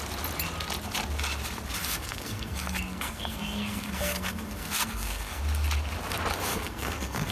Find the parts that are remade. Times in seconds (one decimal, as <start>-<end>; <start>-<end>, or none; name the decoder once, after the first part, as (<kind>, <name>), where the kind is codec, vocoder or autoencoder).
1.8-5.4 (codec, SNAC); 6.5-7.3